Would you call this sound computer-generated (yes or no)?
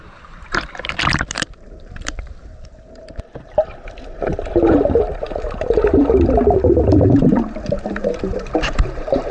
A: yes